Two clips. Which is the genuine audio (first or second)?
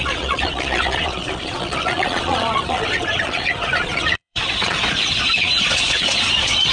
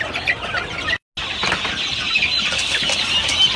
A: second